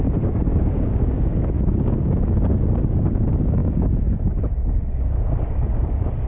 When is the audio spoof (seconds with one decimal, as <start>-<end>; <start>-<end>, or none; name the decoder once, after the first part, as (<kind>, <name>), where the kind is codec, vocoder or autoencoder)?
0.0-6.3 (codec, DAC)